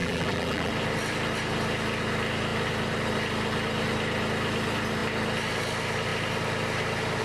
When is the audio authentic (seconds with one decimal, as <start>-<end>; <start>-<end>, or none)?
0.7-7.2